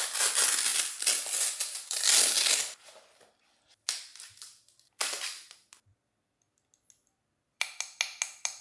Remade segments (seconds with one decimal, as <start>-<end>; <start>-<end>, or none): none